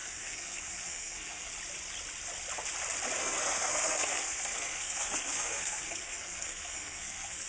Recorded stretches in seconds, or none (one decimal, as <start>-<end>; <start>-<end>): 1.5-3.2